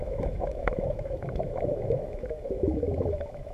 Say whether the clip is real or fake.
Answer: fake